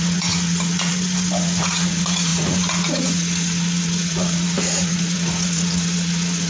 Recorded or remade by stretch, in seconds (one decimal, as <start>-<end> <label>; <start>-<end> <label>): 0.0-0.9 remade; 0.9-1.4 recorded; 1.4-6.5 remade